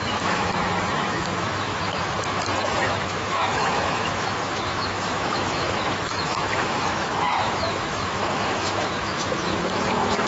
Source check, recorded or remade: remade